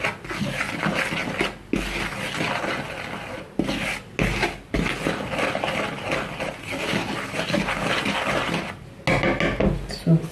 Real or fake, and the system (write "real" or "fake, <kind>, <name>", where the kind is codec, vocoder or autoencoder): real